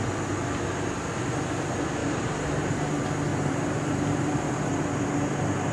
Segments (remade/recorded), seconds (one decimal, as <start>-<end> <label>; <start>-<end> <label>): 0.0-2.0 recorded; 2.0-2.7 remade; 2.7-3.3 recorded; 3.3-4.8 remade; 4.8-5.7 recorded

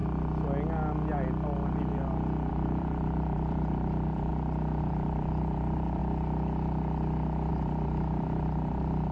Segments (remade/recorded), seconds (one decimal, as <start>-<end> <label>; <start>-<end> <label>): 0.0-2.5 recorded; 2.5-4.3 remade; 4.3-4.8 recorded; 4.8-6.0 remade; 6.0-7.5 recorded; 7.5-9.1 remade